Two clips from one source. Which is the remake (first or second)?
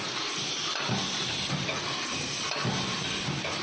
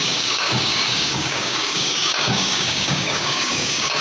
second